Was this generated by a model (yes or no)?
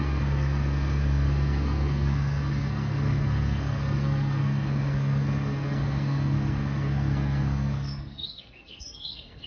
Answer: yes